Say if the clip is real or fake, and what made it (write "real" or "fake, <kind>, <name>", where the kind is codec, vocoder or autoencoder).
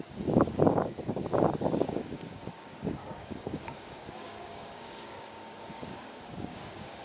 fake, codec, DAC